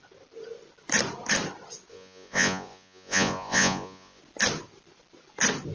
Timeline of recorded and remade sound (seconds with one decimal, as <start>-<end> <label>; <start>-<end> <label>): 0.0-1.9 recorded; 1.9-4.2 remade; 4.2-5.7 recorded